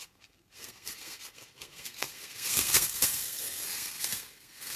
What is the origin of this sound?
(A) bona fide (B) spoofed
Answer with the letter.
B